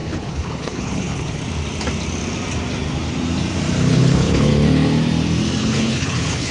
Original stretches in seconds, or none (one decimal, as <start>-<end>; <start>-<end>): 1.4-3.9; 4.5-5.6

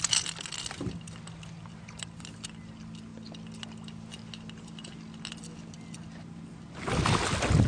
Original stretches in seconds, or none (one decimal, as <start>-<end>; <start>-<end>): 0.0-7.7

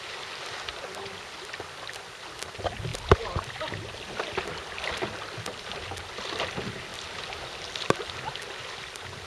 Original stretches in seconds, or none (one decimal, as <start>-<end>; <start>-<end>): 0.0-9.3

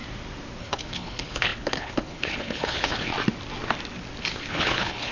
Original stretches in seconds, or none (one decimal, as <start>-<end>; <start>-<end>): 0.0-0.6; 3.1-4.2

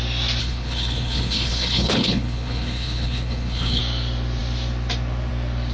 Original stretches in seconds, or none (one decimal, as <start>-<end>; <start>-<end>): 0.0-0.4; 3.8-5.7